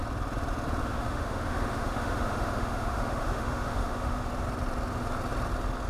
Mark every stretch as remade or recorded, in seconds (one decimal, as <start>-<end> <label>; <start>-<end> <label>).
0.0-0.8 recorded; 0.8-4.3 remade; 4.3-5.9 recorded